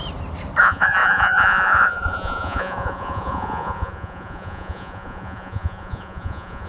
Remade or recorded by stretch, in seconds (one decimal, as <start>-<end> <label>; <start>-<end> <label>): 0.0-0.6 recorded; 0.6-6.7 remade